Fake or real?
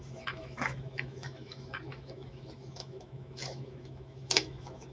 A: fake